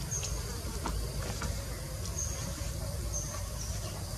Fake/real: real